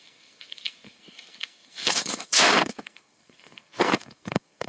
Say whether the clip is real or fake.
fake